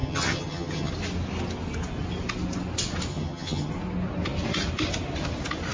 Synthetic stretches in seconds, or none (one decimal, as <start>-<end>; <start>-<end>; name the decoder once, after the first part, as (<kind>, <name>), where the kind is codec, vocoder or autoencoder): 0.0-0.9 (vocoder, HiFi-GAN); 3.1-3.7

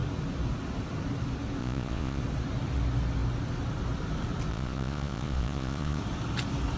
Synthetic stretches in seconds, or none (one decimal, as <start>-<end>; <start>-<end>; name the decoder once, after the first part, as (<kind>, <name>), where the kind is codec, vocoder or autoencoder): 1.6-2.2 (vocoder, Vocos); 4.5-6.0

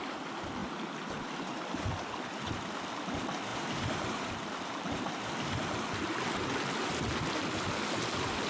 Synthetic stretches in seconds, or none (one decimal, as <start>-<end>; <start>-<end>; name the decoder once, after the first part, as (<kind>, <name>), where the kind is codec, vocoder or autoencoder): 3.5-5.3 (vocoder, BigVGAN v2)

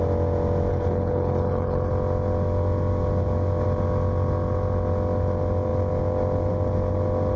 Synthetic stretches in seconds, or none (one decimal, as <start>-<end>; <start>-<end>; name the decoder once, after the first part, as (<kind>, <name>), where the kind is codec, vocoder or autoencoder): 0.7-1.9 (codec, HILCodec)

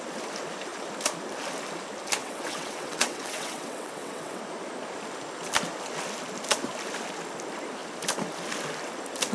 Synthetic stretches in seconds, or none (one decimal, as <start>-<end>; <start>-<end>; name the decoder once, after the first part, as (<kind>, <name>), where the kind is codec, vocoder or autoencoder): 2.2-4.4 (vocoder, WaveNeXt)

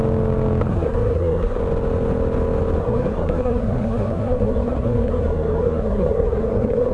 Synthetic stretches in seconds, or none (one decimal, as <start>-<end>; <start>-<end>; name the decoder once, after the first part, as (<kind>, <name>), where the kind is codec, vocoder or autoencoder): 0.7-1.6 (codec, SNAC); 2.8-6.9

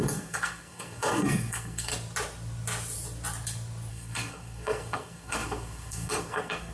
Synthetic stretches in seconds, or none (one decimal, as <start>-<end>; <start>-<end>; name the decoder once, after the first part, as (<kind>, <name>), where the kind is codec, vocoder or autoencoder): 0.0-1.9 (codec, SNAC); 3.9-6.7